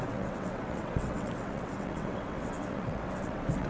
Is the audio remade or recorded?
remade